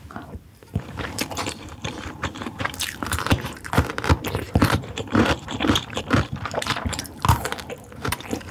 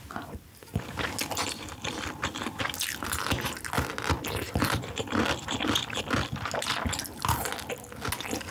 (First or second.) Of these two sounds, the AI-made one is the first